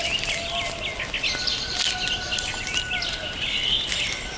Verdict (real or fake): real